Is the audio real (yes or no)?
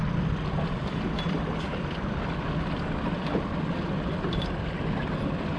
yes